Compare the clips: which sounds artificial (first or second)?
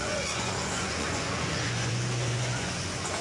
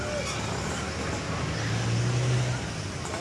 first